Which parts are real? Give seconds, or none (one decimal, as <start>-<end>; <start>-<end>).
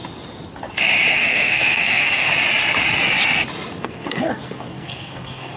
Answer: 0.0-1.1; 2.3-3.8